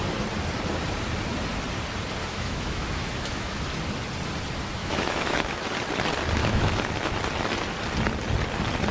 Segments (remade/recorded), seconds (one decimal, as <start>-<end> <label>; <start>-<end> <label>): 0.0-2.2 recorded; 2.2-3.6 remade; 3.6-4.8 recorded; 4.8-5.7 remade; 5.7-6.4 recorded; 6.4-7.1 remade; 7.1-8.9 recorded